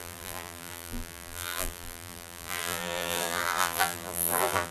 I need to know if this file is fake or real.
fake